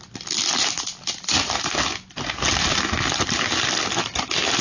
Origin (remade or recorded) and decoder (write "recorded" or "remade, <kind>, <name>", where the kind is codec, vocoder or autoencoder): recorded